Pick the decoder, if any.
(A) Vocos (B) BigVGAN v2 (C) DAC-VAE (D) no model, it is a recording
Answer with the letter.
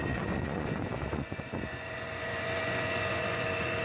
A